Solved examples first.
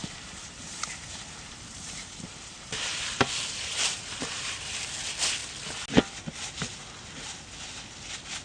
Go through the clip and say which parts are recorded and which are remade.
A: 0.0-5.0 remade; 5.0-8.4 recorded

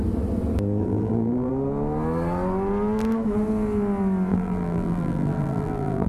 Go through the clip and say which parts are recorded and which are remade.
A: 0.0-0.8 recorded; 0.8-1.5 remade; 1.5-4.3 recorded; 4.3-6.1 remade

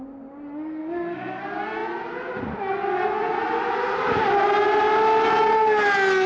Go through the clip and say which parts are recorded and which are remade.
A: 0.0-0.8 recorded; 0.8-1.4 remade; 1.4-6.3 recorded

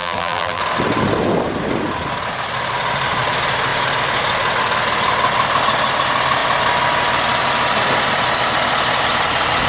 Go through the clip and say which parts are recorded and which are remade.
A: 0.0-0.6 remade; 0.6-9.7 recorded

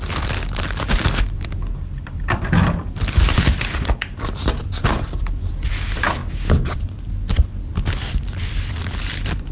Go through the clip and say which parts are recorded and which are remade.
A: 0.0-9.5 remade

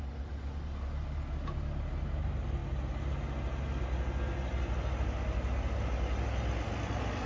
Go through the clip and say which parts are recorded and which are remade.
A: 0.0-7.3 recorded

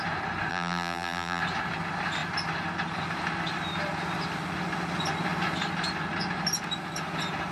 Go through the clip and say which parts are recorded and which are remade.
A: 0.0-0.5 recorded; 0.5-1.4 remade; 1.4-7.5 recorded

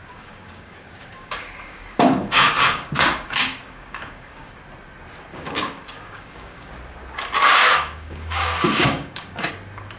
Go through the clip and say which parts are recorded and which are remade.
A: 0.0-4.6 remade; 4.6-5.3 recorded; 5.3-6.7 remade; 6.7-7.6 recorded; 7.6-9.5 remade; 9.5-10.0 recorded